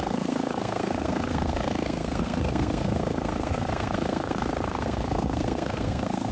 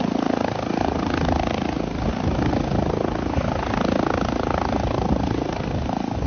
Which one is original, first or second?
second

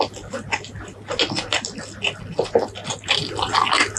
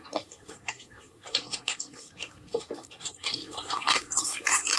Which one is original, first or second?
first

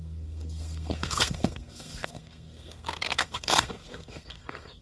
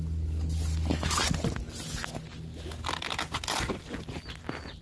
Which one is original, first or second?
second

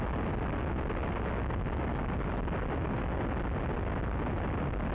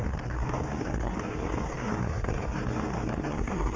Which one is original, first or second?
first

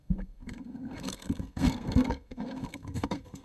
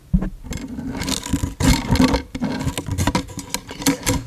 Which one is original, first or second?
second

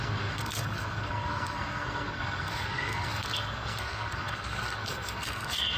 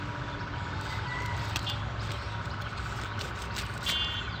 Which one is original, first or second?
second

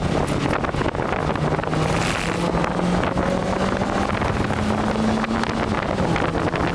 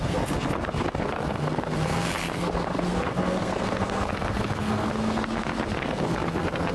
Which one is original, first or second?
first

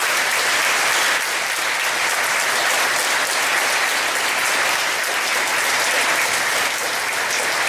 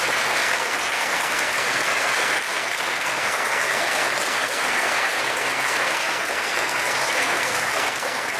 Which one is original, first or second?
first